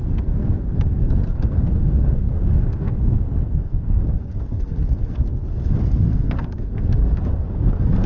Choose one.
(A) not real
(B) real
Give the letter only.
A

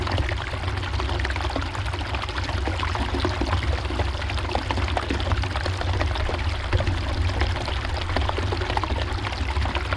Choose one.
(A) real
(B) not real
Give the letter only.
A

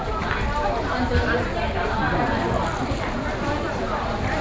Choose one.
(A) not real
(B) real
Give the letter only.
B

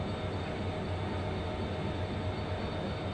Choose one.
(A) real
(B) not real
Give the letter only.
A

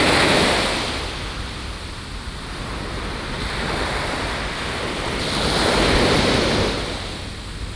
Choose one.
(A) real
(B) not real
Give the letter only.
A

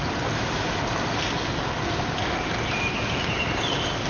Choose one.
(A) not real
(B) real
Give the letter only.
B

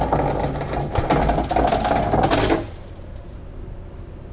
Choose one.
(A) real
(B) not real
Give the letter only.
A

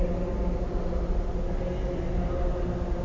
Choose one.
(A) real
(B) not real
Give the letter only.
A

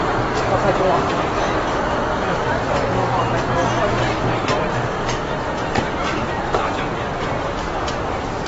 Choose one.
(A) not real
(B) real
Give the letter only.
A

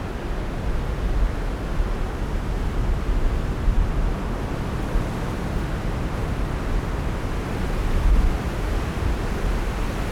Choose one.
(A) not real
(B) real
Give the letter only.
B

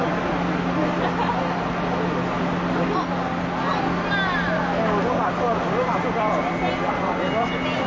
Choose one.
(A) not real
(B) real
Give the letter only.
B